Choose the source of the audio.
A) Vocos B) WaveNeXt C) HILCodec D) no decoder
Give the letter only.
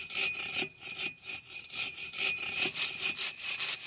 D